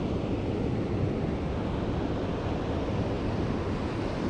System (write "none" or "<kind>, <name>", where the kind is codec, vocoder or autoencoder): none